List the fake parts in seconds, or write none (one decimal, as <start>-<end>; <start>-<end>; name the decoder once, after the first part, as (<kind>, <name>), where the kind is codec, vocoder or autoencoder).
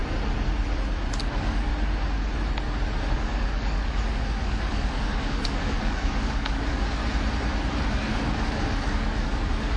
1.2-1.7 (codec, DAC); 3.1-7.0; 7.9-9.8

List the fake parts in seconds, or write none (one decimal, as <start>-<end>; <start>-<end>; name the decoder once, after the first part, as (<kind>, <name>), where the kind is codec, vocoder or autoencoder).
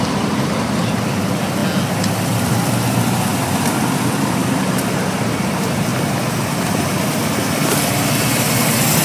0.0-1.6 (vocoder, BigVGAN v2); 2.2-5.9; 6.6-7.2; 8.3-9.0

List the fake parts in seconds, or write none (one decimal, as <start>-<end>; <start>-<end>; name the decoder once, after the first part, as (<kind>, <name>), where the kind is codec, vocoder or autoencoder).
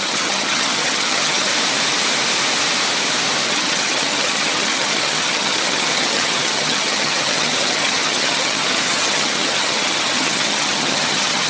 0.0-1.5 (vocoder, HiFi-GAN); 3.5-11.5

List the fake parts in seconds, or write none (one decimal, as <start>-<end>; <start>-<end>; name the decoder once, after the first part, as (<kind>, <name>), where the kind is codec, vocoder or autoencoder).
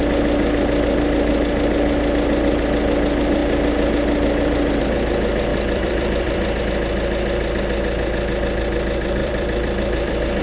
5.5-6.6 (vocoder, BigVGAN v2); 9.2-10.4